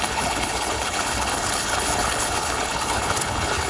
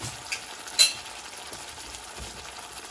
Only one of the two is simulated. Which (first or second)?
first